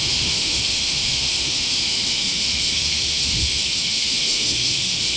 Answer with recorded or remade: remade